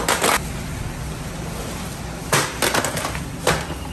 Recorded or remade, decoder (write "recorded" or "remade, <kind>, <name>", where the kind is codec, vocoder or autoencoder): recorded